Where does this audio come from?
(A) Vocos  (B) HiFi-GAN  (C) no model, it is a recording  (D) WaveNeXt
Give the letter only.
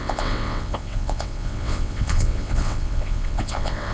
D